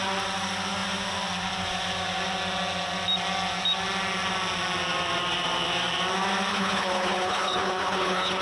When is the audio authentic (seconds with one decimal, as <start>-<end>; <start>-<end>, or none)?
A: 0.0-6.5